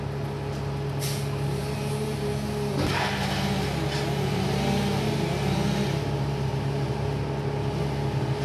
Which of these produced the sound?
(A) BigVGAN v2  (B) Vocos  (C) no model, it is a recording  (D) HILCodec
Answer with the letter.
C